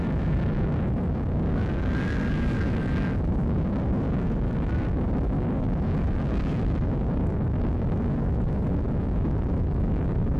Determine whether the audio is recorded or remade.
remade